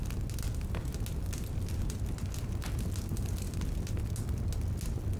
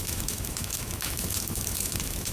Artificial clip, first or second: second